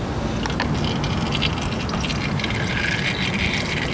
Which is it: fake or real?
real